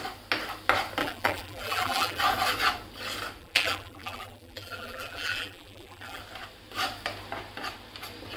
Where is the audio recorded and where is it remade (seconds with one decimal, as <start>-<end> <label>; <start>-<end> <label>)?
0.0-1.0 recorded; 1.0-2.2 remade; 2.2-3.4 recorded; 3.4-6.2 remade; 6.2-8.4 recorded